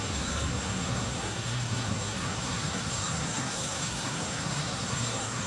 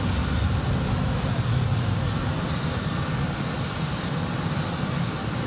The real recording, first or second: second